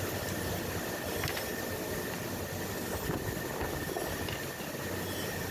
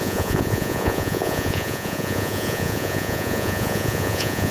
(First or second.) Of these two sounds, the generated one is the second